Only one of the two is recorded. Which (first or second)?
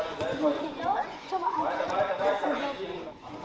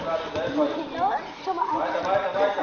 second